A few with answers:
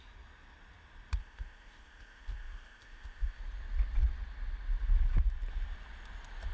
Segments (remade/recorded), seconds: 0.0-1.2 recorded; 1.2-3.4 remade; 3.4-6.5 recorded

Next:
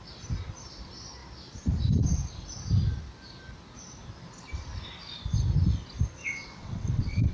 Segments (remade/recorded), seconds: 0.0-6.2 recorded; 6.2-7.3 remade

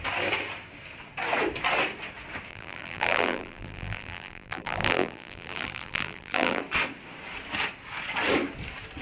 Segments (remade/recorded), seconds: 0.0-2.5 recorded; 2.5-6.6 remade; 6.6-9.0 recorded

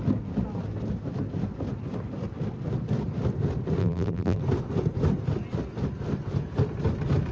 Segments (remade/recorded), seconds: 0.0-3.8 recorded; 3.8-4.4 remade; 4.4-7.3 recorded

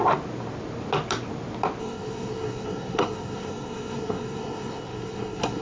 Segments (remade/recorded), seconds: 0.0-1.8 recorded; 1.8-5.6 remade